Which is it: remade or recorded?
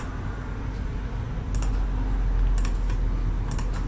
recorded